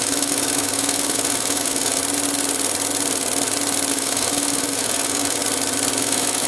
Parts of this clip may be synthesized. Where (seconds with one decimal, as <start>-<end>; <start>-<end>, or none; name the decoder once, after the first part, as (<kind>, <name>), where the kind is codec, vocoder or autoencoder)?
0.0-2.0 (autoencoder, DAC-VAE); 3.9-5.4; 6.0-6.5